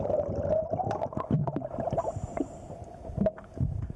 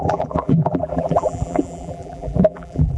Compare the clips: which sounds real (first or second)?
first